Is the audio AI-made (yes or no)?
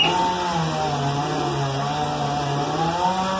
no